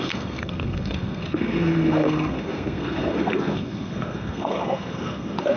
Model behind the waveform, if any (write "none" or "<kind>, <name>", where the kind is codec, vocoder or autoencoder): codec, SNAC